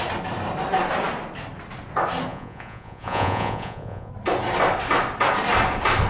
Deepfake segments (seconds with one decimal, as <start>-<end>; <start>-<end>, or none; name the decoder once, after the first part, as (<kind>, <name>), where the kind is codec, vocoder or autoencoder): 2.3-4.1 (vocoder, Vocos)

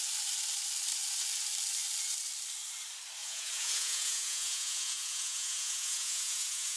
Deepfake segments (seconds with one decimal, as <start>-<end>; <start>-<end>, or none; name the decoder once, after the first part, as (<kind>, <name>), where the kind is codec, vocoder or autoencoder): 3.2-6.8 (vocoder, Vocos)

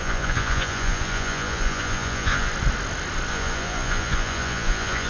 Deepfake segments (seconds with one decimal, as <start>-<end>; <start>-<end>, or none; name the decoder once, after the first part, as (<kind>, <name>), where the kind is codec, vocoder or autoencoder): 0.0-2.5 (vocoder, Vocos); 3.3-5.1

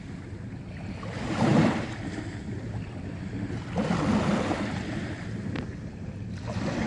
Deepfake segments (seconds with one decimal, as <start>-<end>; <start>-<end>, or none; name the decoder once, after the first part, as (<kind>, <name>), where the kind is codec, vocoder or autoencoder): none